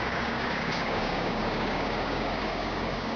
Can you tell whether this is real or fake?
fake